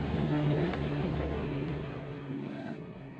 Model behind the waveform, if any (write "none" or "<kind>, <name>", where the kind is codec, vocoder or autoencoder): codec, SNAC